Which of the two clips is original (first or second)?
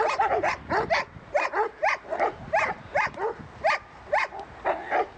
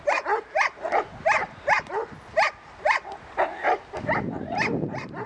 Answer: first